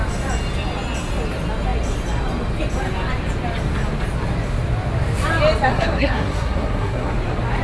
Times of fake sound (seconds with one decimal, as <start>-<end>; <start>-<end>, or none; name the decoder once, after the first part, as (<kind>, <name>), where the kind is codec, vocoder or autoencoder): 5.7-7.1 (codec, SNAC)